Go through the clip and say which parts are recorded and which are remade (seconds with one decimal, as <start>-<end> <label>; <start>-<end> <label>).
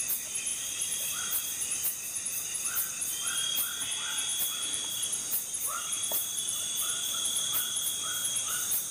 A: 0.0-0.5 recorded; 0.5-1.4 remade; 1.4-4.3 recorded; 4.3-5.0 remade; 5.0-6.2 recorded; 6.2-6.8 remade; 6.8-8.9 recorded